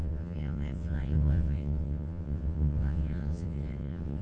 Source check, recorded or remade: remade